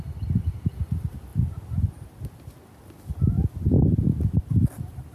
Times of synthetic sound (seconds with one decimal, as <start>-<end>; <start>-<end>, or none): none